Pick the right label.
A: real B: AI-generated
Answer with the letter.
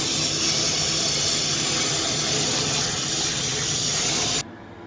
A